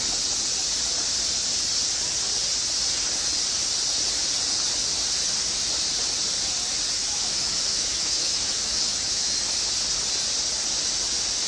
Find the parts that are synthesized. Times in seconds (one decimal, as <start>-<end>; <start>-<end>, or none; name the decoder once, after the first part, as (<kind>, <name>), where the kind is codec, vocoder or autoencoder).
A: 7.0-9.3 (autoencoder, DAC-VAE)